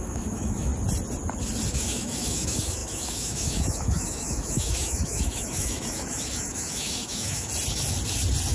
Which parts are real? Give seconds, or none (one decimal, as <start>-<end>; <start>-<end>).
0.7-1.7; 7.5-8.5